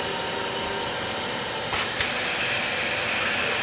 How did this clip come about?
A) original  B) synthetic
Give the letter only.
A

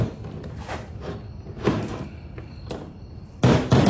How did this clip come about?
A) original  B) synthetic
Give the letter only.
A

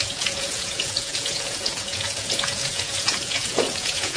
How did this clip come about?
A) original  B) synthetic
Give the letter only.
B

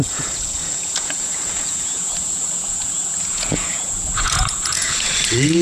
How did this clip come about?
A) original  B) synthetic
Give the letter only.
B